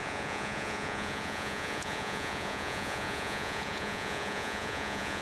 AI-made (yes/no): yes